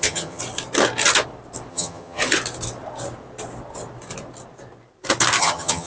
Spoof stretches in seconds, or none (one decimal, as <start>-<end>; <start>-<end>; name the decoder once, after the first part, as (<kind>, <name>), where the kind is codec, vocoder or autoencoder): 0.0-0.4 (vocoder, HiFi-GAN); 1.7-2.2; 5.4-5.9